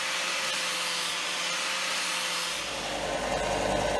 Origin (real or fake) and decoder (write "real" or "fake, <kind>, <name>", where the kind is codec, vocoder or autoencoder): real